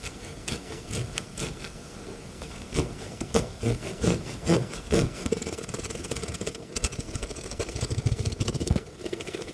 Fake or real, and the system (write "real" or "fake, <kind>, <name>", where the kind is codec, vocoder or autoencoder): fake, codec, SNAC